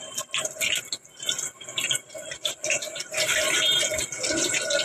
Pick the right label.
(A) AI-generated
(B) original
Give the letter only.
B